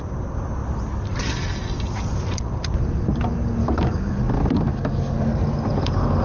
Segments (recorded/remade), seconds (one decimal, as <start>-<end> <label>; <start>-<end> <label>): 0.0-3.6 recorded; 3.6-4.2 remade; 4.2-4.7 recorded; 4.7-5.3 remade; 5.3-6.2 recorded